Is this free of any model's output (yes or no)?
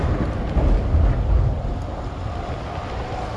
yes